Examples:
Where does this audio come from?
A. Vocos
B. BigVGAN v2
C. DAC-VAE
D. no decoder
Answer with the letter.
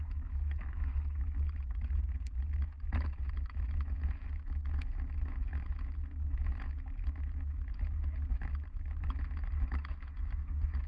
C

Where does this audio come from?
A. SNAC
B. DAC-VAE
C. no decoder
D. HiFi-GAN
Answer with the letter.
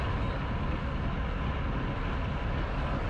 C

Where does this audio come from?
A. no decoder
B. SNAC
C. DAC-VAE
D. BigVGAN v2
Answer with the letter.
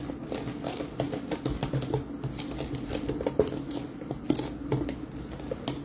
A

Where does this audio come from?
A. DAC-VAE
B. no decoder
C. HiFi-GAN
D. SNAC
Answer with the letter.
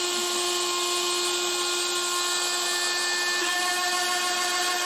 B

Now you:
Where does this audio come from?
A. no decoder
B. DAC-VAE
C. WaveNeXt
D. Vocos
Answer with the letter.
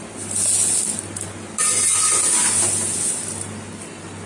A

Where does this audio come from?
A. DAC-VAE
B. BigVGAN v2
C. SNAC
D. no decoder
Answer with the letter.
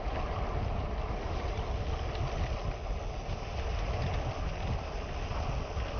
D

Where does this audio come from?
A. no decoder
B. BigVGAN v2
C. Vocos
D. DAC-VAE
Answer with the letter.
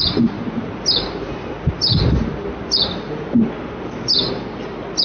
A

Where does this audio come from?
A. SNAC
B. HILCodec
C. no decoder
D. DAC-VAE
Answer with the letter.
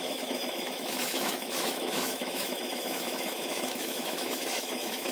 D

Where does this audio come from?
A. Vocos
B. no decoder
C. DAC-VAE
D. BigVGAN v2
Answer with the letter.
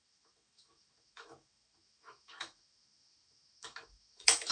C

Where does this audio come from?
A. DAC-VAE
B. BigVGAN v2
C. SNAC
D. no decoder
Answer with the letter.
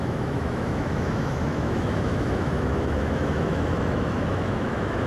A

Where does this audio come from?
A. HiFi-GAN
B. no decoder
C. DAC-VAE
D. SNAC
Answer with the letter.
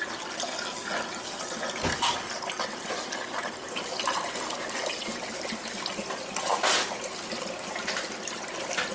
B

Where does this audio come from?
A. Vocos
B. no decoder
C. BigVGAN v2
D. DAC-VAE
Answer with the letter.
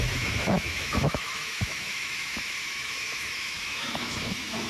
D